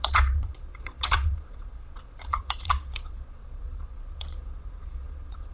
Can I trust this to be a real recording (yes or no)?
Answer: no